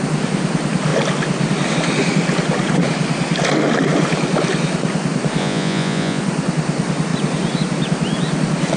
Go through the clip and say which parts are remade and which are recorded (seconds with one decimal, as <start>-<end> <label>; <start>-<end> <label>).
0.0-5.4 recorded; 5.4-6.2 remade; 6.2-8.8 recorded